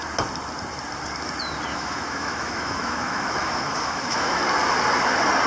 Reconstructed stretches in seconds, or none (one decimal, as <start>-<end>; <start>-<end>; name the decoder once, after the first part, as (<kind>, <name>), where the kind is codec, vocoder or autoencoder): 1.7-4.4 (autoencoder, DAC-VAE)